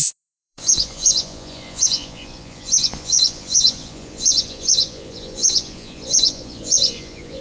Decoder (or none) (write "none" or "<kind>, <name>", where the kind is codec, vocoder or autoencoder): vocoder, Vocos